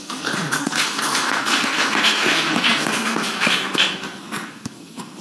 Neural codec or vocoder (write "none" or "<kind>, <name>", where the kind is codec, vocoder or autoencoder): codec, SNAC